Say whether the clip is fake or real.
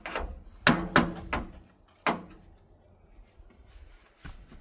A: real